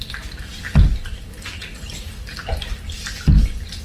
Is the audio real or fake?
real